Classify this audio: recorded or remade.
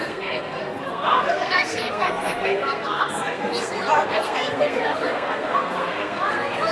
remade